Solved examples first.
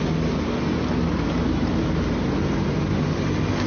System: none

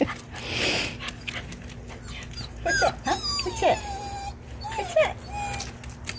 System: none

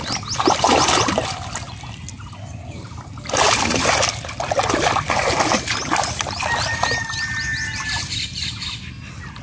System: none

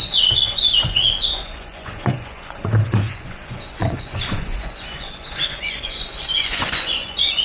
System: vocoder, Vocos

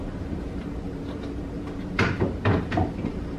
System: vocoder, BigVGAN v2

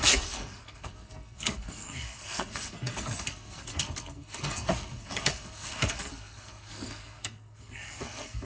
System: codec, SNAC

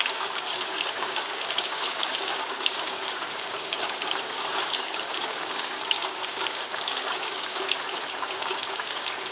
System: codec, DAC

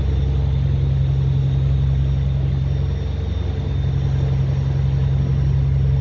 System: none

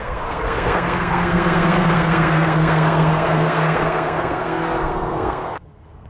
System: codec, SNAC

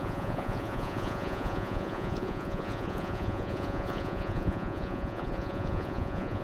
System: vocoder, Vocos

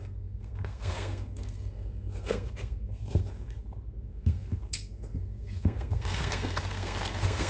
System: codec, SNAC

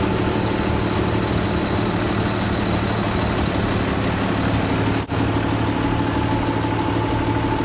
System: none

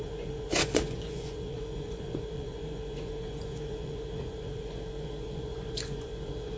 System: vocoder, Vocos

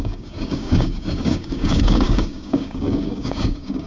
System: codec, DAC